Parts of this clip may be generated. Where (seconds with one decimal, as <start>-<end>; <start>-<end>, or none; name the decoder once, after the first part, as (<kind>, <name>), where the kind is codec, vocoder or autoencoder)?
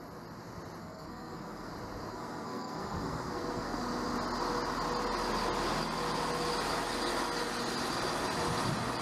0.8-1.7 (codec, SNAC); 2.1-3.8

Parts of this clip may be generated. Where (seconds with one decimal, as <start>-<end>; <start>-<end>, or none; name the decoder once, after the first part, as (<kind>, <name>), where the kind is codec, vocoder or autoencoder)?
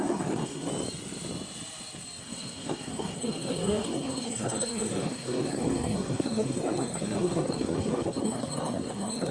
0.0-0.7 (codec, SNAC); 2.2-9.3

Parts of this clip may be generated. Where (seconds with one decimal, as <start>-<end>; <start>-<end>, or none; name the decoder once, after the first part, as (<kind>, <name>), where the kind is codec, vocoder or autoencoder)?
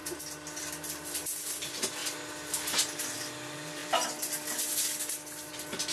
none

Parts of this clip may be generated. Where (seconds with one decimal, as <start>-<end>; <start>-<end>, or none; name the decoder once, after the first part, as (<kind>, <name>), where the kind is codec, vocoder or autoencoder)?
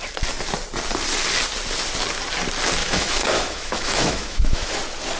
2.8-4.7 (autoencoder, DAC-VAE)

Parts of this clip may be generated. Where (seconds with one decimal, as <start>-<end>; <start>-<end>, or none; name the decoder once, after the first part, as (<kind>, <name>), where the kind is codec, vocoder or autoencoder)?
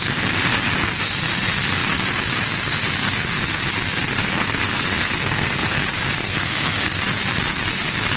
4.2-5.8 (codec, SNAC); 6.2-7.0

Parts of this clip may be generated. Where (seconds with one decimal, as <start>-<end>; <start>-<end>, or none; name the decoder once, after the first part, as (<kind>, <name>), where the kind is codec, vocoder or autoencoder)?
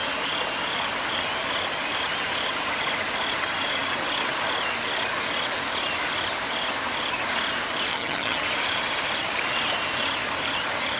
7.9-8.4 (vocoder, HiFi-GAN)